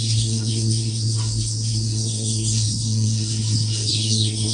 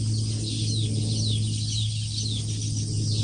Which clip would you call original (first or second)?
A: second